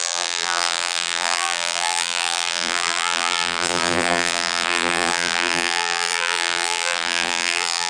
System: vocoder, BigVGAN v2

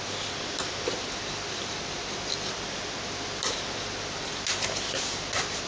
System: none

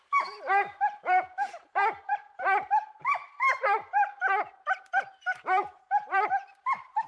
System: vocoder, BigVGAN v2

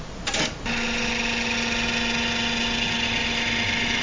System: none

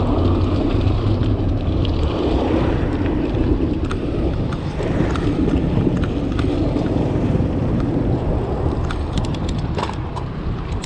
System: vocoder, BigVGAN v2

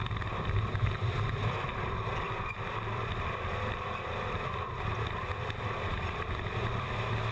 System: vocoder, BigVGAN v2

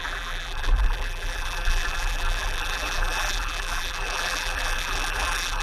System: vocoder, BigVGAN v2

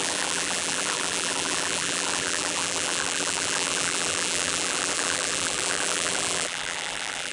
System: vocoder, BigVGAN v2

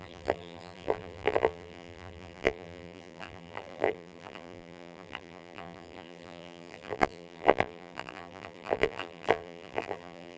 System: vocoder, BigVGAN v2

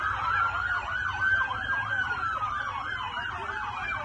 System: none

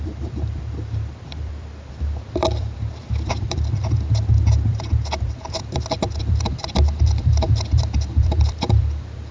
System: vocoder, BigVGAN v2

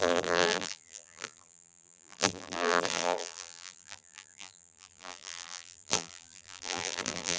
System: vocoder, BigVGAN v2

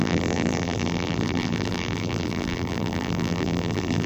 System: vocoder, BigVGAN v2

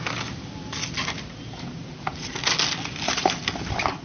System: none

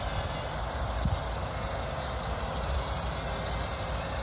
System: vocoder, BigVGAN v2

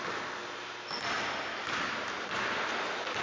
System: none